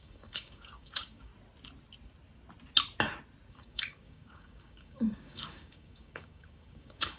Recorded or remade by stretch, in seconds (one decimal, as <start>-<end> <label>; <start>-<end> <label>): 0.0-1.3 remade; 1.3-3.5 recorded; 3.5-7.2 remade